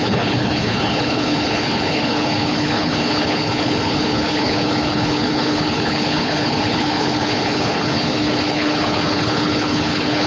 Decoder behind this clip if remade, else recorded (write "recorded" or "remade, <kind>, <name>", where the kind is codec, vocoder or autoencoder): remade, codec, HILCodec